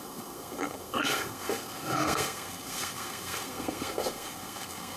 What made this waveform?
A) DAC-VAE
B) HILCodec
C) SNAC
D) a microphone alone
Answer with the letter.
C